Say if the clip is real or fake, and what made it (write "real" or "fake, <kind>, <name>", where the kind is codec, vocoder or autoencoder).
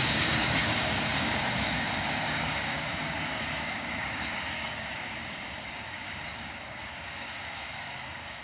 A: fake, codec, DAC